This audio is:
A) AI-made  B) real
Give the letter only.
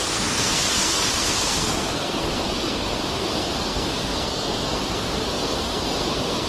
A